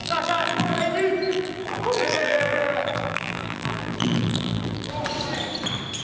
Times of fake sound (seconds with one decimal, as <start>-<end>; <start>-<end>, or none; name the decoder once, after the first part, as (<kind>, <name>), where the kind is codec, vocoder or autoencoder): 0.0-0.8 (vocoder, BigVGAN v2); 1.3-4.9